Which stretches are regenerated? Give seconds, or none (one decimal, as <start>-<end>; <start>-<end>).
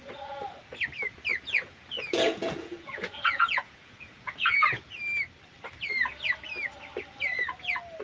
1.3-4.9